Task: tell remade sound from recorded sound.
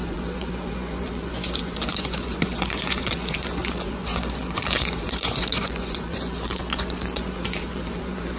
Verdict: remade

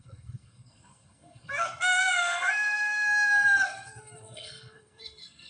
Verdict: remade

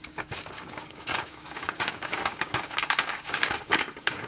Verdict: remade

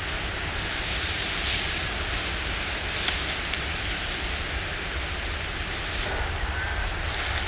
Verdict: recorded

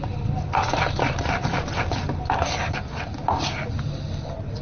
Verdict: recorded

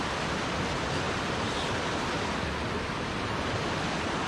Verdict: recorded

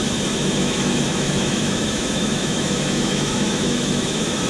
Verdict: remade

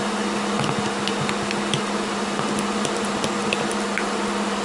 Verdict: recorded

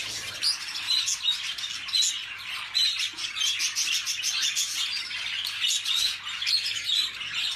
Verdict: recorded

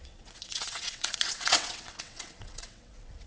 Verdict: remade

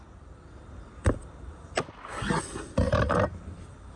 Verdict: recorded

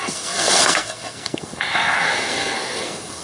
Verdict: remade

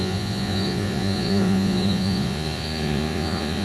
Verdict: remade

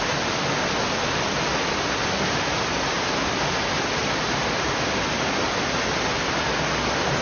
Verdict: recorded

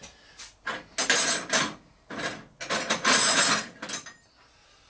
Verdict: recorded